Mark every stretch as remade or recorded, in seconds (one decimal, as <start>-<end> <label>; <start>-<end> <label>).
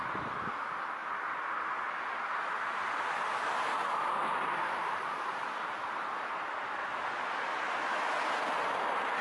0.0-9.2 recorded